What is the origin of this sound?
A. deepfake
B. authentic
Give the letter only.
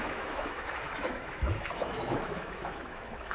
A